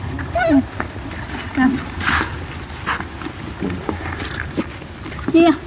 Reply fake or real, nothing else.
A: real